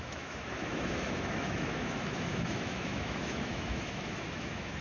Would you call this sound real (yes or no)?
no